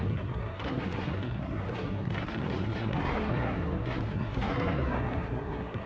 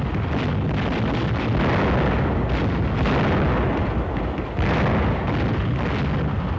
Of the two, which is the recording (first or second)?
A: second